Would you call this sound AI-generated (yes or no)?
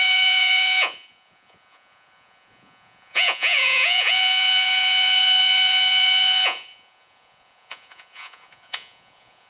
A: yes